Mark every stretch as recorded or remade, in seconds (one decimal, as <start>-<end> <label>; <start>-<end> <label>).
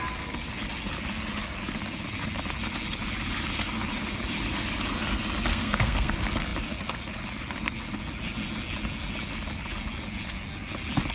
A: 0.0-5.5 recorded; 5.5-6.1 remade; 6.1-11.1 recorded